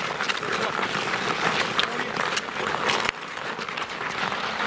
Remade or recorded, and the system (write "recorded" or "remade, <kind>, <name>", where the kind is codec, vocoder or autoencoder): recorded